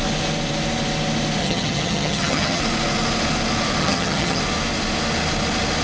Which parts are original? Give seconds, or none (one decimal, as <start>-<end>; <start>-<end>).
0.0-1.4; 2.6-3.8; 4.4-5.8